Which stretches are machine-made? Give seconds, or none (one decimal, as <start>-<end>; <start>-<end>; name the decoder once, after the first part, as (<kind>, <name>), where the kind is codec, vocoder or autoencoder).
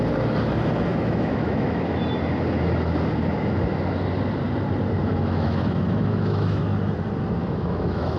0.9-2.0 (autoencoder, DAC-VAE); 5.0-6.6; 7.4-8.2